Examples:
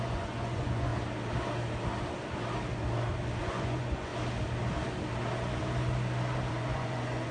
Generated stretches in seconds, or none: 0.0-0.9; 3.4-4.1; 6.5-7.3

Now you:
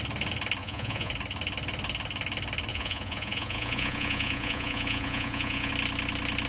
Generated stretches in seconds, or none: 0.6-1.1; 2.7-5.7

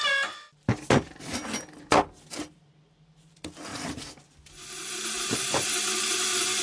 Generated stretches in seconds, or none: none

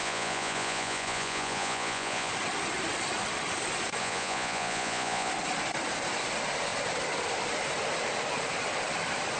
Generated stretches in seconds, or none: 0.0-2.3; 4.0-5.3

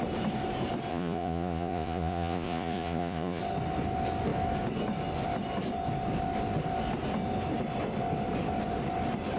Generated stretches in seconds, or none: 0.9-3.4

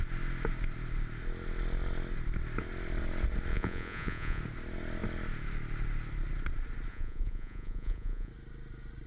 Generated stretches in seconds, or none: 3.5-4.4; 6.9-8.3

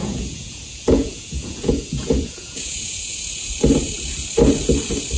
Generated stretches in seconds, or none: 0.0-3.5

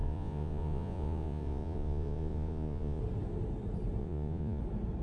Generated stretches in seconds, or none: 0.0-3.0; 4.0-4.6